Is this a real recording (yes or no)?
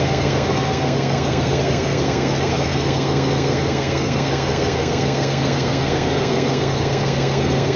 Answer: no